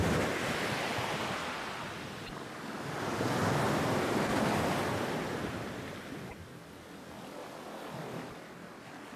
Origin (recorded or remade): recorded